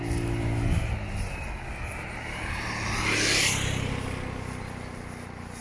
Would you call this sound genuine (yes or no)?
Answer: yes